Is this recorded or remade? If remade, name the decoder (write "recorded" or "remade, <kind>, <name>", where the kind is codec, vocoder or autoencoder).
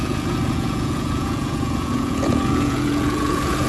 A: remade, vocoder, Vocos